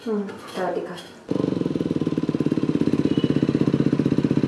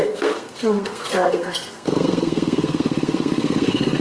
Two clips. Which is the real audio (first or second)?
first